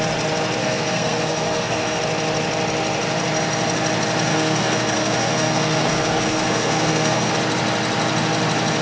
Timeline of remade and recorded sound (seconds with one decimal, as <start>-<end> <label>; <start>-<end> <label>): 0.0-0.6 recorded; 0.6-2.0 remade; 2.0-4.3 recorded; 4.3-7.3 remade; 7.3-8.8 recorded